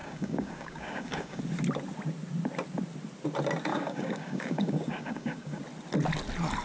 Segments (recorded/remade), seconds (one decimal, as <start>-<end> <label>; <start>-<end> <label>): 0.0-1.4 remade; 1.4-3.7 recorded; 3.7-5.6 remade; 5.6-6.6 recorded